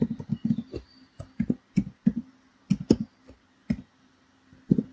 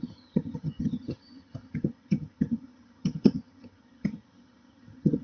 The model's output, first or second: second